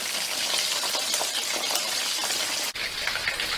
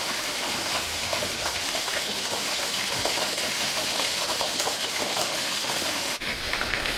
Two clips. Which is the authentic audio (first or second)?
first